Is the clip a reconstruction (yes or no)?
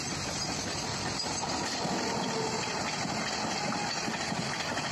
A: no